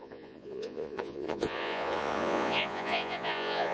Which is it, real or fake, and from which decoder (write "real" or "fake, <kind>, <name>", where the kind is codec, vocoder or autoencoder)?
fake, vocoder, Vocos